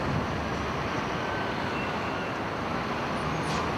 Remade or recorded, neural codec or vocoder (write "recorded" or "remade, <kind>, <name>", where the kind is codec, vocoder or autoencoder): recorded